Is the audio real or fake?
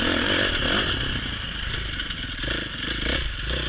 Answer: real